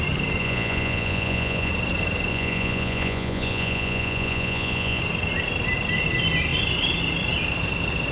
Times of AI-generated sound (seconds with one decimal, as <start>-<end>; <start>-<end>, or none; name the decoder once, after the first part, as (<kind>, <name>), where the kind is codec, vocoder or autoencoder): 0.4-1.7 (vocoder, Vocos); 2.3-5.0